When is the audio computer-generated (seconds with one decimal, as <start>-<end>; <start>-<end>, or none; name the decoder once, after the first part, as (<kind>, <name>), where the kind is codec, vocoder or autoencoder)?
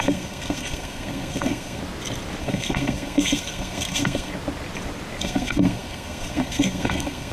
0.0-1.8 (codec, SNAC); 2.4-4.3; 5.2-7.3